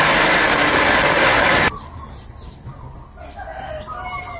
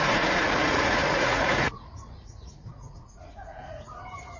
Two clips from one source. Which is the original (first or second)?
first